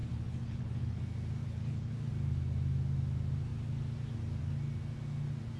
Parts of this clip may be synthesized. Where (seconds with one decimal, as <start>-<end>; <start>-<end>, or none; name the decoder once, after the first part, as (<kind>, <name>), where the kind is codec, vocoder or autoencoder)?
0.0-1.0 (codec, HILCodec); 1.4-2.1